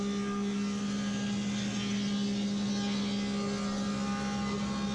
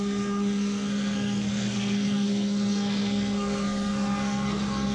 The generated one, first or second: second